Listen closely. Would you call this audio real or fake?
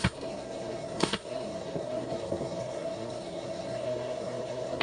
fake